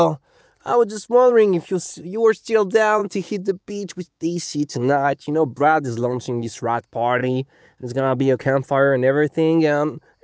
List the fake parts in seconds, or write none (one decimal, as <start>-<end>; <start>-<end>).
3.0-6.6; 7.2-8.4